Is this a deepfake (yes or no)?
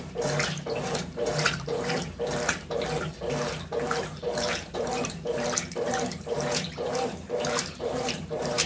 yes